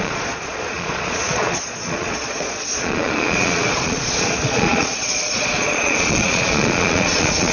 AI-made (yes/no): yes